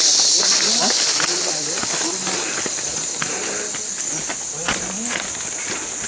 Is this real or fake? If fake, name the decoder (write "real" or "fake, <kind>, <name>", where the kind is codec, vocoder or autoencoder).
real